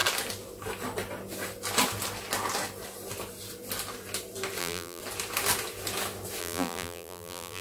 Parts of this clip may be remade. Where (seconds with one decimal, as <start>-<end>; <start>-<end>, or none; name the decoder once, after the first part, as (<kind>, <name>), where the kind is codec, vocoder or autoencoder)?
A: 4.6-5.0 (vocoder, BigVGAN v2); 6.4-7.6